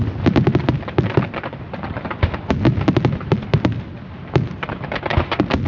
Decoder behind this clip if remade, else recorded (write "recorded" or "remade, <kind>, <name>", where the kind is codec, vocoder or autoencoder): recorded